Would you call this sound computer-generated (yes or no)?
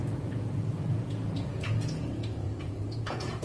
yes